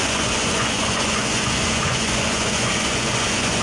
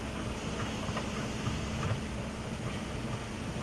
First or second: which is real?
second